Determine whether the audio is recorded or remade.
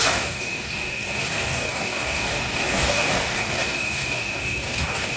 remade